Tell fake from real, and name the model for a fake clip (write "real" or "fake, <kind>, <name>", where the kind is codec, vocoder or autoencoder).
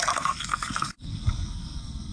fake, codec, SNAC